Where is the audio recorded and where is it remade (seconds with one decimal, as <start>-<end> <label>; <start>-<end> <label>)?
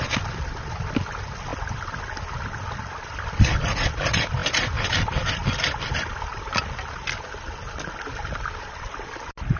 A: 0.0-9.6 recorded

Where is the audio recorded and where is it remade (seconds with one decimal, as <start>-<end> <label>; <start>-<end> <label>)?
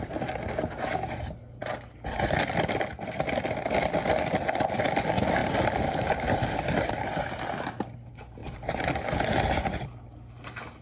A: 0.0-5.4 recorded; 5.4-7.0 remade; 7.0-8.4 recorded; 8.4-8.9 remade; 8.9-10.8 recorded